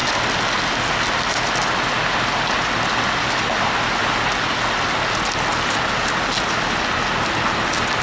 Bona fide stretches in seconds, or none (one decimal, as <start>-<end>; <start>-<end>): 0.0-8.0